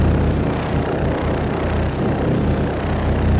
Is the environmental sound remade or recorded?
recorded